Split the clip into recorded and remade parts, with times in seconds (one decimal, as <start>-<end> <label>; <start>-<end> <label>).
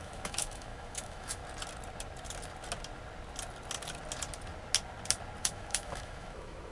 0.0-1.4 remade; 1.4-5.4 recorded; 5.4-6.7 remade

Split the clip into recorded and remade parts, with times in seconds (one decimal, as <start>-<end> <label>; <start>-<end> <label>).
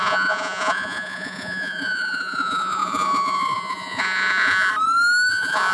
0.0-4.7 remade; 4.7-5.3 recorded; 5.3-5.7 remade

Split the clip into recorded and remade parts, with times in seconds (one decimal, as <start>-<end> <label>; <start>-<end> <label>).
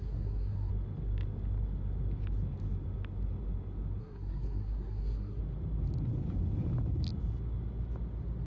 0.0-0.7 remade; 0.7-4.0 recorded; 4.0-5.4 remade; 5.4-8.5 recorded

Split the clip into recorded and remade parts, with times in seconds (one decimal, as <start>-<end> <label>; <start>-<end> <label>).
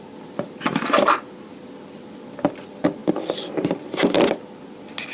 0.0-5.1 recorded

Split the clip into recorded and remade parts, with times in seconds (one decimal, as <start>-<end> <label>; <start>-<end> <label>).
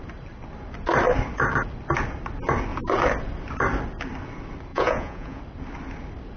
0.0-4.7 recorded; 4.7-5.4 remade; 5.4-6.4 recorded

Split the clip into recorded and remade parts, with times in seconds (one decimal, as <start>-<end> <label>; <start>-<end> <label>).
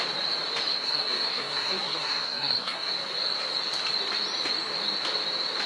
0.0-0.7 recorded; 0.7-2.9 remade; 2.9-5.7 recorded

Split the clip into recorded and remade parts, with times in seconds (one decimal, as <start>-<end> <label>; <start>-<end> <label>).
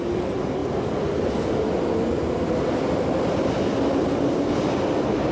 0.0-5.3 recorded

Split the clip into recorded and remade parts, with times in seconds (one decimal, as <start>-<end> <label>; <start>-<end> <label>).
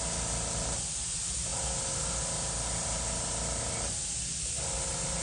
0.0-5.2 recorded